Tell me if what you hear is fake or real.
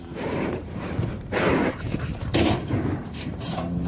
fake